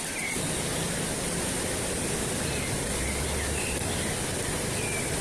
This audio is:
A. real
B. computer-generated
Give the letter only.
A